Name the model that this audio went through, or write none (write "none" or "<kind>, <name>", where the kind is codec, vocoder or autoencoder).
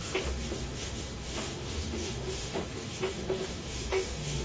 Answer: autoencoder, DAC-VAE